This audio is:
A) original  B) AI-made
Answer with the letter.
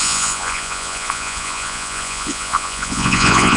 B